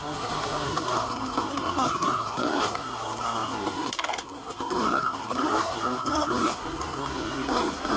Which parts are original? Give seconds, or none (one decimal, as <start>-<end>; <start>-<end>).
none